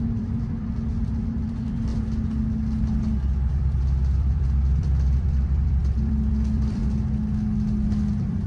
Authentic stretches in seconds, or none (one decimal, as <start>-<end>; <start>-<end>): 1.9-3.5; 6.8-8.1